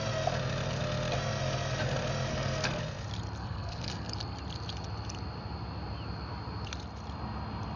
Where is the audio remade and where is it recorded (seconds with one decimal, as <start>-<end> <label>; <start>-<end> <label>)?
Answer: 0.0-2.3 recorded; 2.3-2.8 remade; 2.8-3.4 recorded; 3.4-4.1 remade; 4.1-7.8 recorded